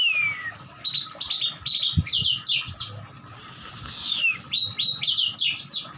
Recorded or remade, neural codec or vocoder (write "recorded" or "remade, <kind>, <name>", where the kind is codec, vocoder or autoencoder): recorded